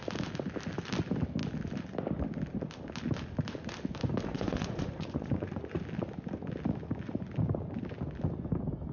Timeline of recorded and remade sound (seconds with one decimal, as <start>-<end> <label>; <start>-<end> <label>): 0.0-4.3 recorded; 4.3-5.8 remade; 5.8-8.9 recorded